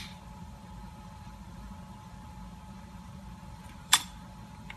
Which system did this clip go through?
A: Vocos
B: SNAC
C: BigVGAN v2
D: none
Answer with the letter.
C